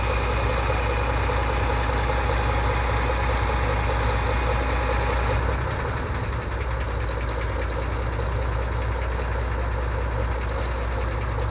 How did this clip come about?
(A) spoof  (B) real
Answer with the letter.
B